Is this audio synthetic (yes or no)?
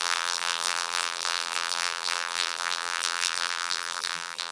yes